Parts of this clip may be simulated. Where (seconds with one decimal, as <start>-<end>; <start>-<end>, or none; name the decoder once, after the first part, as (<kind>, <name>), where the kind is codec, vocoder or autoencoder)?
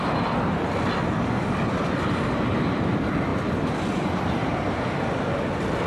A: none